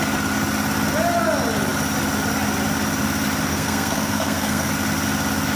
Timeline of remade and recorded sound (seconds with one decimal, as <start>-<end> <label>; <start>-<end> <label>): 0.0-3.5 recorded; 3.5-4.7 remade; 4.7-5.5 recorded